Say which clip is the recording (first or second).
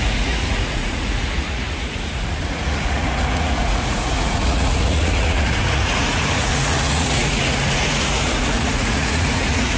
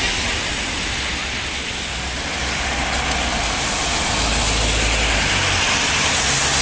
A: second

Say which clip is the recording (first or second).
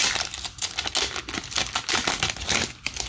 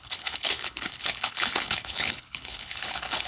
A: first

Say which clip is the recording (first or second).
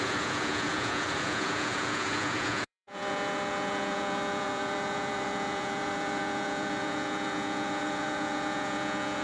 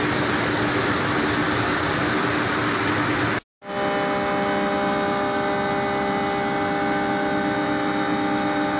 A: second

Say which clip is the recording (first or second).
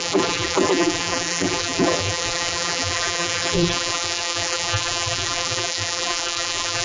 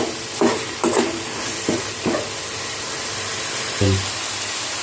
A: second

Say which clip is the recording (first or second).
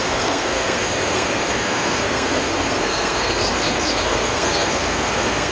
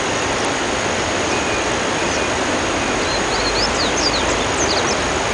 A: second